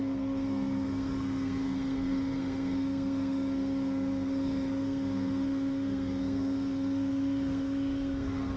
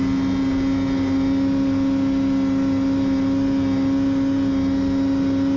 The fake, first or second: first